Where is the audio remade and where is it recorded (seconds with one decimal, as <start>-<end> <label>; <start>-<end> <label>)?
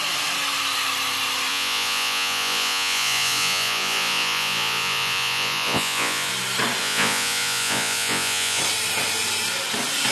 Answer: 0.0-1.5 recorded; 1.5-6.3 remade; 6.3-6.8 recorded; 6.8-8.6 remade; 8.6-10.1 recorded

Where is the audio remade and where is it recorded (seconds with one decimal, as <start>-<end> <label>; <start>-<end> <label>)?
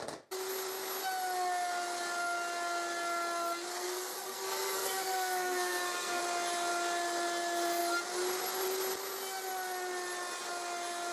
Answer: 0.0-3.7 recorded; 3.7-6.2 remade; 6.2-11.1 recorded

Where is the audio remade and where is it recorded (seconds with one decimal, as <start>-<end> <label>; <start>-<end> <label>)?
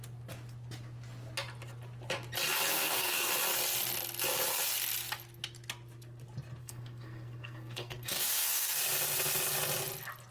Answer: 0.0-2.7 recorded; 2.7-3.3 remade; 3.3-6.6 recorded; 6.6-8.8 remade; 8.8-10.3 recorded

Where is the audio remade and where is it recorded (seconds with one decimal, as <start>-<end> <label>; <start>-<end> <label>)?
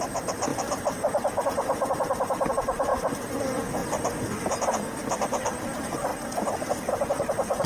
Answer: 0.0-3.8 recorded; 3.8-4.5 remade; 4.5-7.7 recorded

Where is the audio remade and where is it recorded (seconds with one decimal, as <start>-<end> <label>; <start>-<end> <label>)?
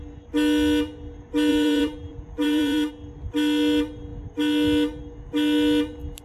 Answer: 0.0-1.5 recorded; 1.5-2.9 remade; 2.9-6.2 recorded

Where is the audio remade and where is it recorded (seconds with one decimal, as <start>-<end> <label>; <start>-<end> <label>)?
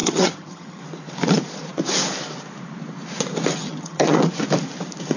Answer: 0.0-0.8 remade; 0.8-3.6 recorded; 3.6-4.3 remade; 4.3-5.2 recorded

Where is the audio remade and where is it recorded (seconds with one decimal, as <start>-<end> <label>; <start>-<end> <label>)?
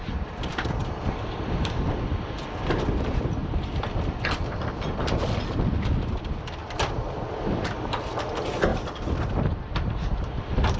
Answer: 0.0-6.6 recorded; 6.6-7.4 remade; 7.4-8.7 recorded; 8.7-9.2 remade; 9.2-10.8 recorded